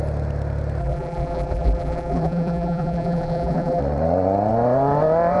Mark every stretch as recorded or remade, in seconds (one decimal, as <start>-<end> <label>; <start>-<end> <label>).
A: 0.0-0.8 recorded; 0.8-3.8 remade; 3.8-5.4 recorded